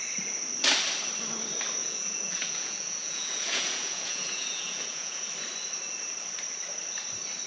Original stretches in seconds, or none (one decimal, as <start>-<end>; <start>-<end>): 0.0-1.8; 5.3-7.5